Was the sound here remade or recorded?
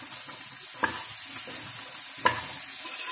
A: recorded